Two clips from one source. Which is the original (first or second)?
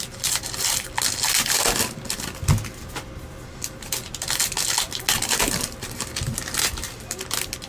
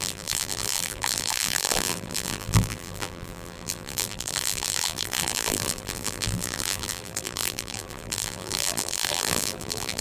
first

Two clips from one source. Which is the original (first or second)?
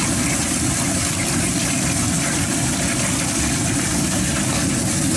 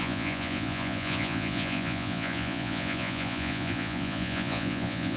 first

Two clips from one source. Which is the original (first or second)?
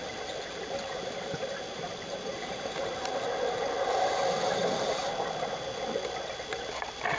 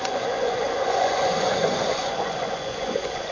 first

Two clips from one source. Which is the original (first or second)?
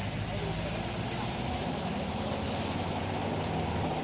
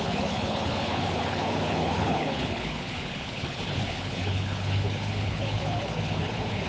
first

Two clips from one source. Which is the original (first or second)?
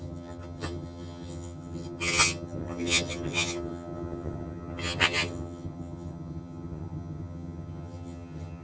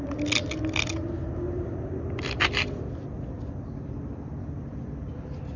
second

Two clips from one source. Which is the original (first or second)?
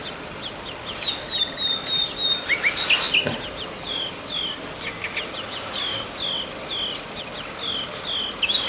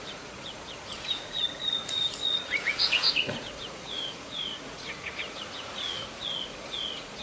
first